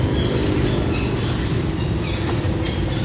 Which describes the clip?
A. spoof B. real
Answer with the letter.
B